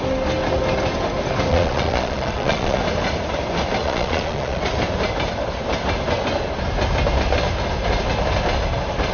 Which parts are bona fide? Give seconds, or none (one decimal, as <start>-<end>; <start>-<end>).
0.0-1.5; 2.8-3.8; 4.6-9.1